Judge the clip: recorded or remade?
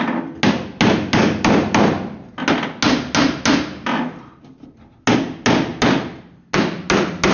recorded